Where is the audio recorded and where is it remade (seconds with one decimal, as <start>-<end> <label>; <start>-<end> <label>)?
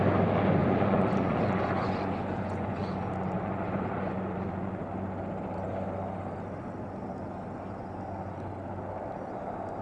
0.0-0.6 recorded; 0.6-4.8 remade; 4.8-9.8 recorded